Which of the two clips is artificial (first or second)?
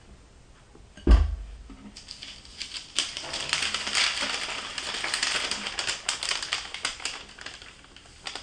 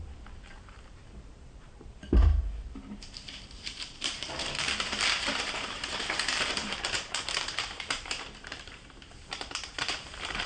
second